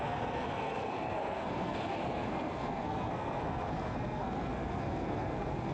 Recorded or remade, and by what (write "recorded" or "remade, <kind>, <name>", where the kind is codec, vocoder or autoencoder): remade, codec, SNAC